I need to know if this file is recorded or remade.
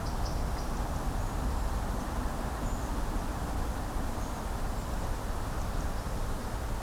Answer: recorded